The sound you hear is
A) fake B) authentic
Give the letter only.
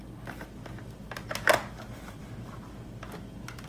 B